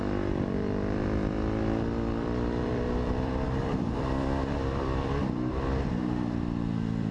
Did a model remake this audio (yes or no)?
yes